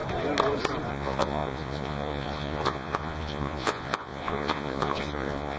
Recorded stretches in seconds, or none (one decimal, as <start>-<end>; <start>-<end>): 0.0-0.9